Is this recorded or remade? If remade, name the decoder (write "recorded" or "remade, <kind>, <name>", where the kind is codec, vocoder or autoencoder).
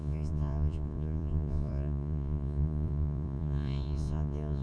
remade, vocoder, Vocos